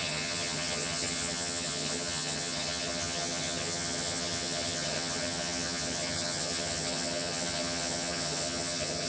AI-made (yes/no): yes